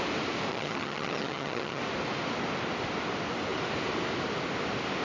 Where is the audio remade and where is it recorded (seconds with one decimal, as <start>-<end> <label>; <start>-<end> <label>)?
0.0-0.5 recorded; 0.5-1.8 remade; 1.8-5.0 recorded